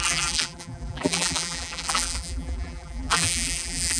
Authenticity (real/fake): fake